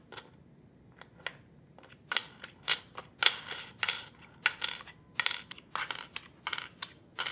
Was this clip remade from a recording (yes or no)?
no